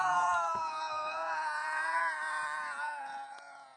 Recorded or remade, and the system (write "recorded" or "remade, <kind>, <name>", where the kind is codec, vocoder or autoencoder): remade, vocoder, Vocos